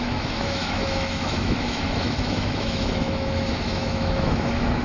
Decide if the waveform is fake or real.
fake